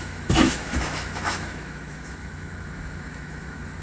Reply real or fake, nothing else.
fake